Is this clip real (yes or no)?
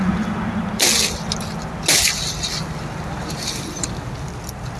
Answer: yes